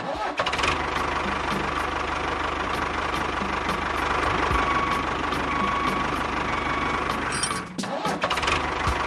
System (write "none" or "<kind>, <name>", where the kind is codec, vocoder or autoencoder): none